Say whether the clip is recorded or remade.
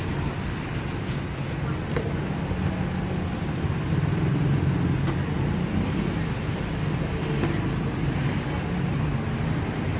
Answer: recorded